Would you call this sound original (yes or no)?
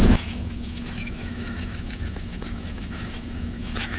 no